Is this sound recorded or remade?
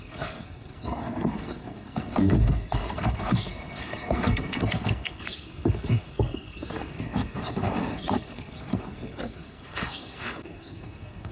remade